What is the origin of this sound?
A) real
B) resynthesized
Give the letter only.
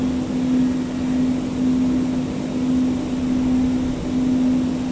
A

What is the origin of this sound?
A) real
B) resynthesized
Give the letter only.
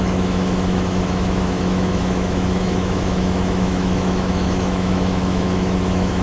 B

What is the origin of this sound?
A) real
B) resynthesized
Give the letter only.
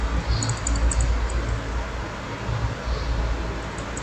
A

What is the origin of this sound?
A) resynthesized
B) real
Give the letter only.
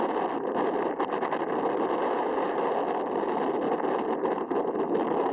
B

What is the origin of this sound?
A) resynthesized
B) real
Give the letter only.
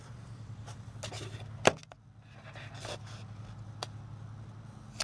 B